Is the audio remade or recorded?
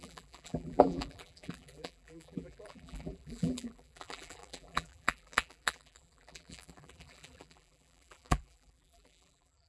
remade